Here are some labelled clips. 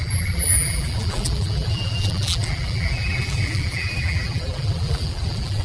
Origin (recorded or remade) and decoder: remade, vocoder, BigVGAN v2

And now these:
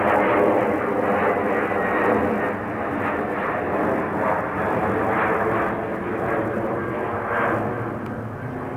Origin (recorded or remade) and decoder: recorded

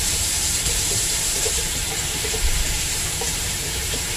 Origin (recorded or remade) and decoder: remade, vocoder, BigVGAN v2